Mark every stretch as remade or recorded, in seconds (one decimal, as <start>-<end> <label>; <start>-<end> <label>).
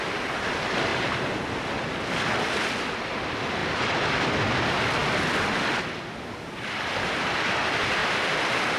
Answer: 0.0-3.6 recorded; 3.6-4.3 remade; 4.3-5.0 recorded; 5.0-7.6 remade; 7.6-8.0 recorded; 8.0-8.8 remade